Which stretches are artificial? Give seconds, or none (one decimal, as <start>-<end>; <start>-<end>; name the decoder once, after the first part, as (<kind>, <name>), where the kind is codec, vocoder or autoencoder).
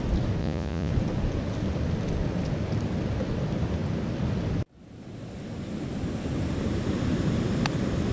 0.4-0.9 (vocoder, Vocos)